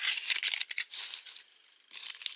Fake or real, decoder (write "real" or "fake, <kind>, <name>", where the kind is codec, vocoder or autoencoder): real